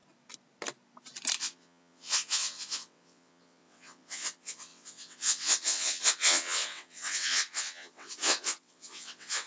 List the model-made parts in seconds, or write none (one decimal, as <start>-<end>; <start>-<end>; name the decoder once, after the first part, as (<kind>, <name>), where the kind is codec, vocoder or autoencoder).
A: 1.4-9.5 (vocoder, WaveNeXt)